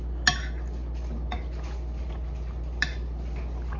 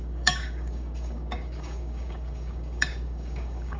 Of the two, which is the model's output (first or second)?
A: second